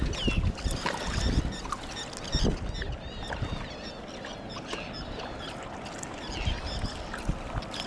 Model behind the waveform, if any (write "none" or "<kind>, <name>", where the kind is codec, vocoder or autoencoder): none